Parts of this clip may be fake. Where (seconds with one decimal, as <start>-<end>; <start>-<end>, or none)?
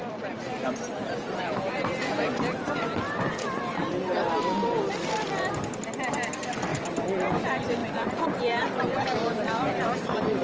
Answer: 0.0-3.9; 7.8-8.6